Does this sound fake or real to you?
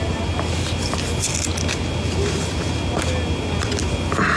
real